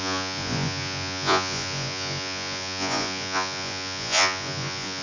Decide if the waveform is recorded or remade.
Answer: remade